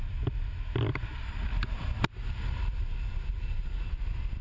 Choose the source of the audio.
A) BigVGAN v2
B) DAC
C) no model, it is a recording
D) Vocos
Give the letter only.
C